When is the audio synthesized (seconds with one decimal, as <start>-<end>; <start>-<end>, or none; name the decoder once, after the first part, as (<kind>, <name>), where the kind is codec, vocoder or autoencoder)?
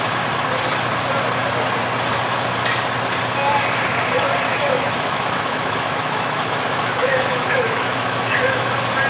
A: 4.5-8.7 (autoencoder, DAC-VAE)